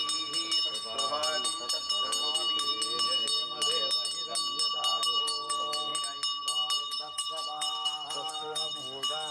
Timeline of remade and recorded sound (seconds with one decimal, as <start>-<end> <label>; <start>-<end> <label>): 0.0-5.2 recorded; 5.2-5.9 remade; 5.9-6.8 recorded; 6.8-9.3 remade